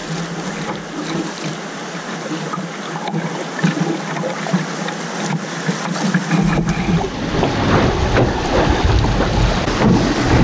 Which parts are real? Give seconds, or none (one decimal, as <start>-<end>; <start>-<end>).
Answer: 0.0-10.4